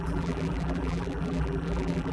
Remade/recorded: remade